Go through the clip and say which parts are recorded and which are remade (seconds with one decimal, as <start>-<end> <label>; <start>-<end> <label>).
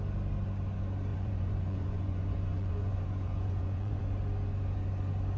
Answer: 0.0-1.1 recorded; 1.1-4.0 remade; 4.0-5.4 recorded